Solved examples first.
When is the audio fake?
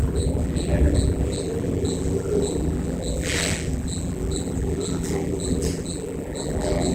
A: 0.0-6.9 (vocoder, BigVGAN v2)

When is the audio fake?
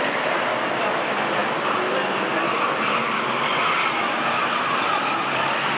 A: 0.0-5.8 (vocoder, BigVGAN v2)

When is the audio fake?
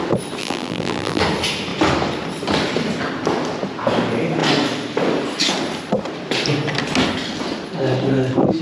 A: 0.4-1.2 (vocoder, BigVGAN v2)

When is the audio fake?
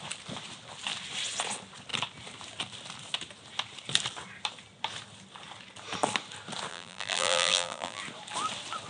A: 6.7-8.0 (vocoder, BigVGAN v2)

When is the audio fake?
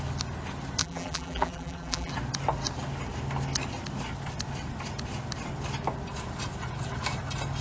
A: 0.8-2.1 (vocoder, BigVGAN v2)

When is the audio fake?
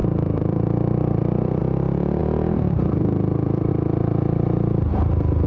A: 0.0-1.6 (vocoder, BigVGAN v2); 2.2-3.7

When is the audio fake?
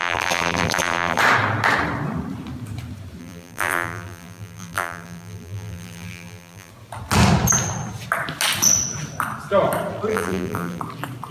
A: 0.0-1.2 (vocoder, BigVGAN v2); 3.2-6.7; 10.1-10.8